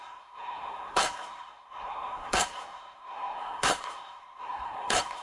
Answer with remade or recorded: remade